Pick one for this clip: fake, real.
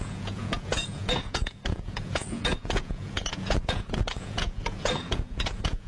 fake